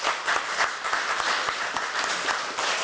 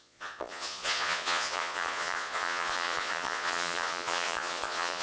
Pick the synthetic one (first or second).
second